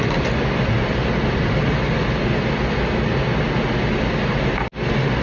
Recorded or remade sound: recorded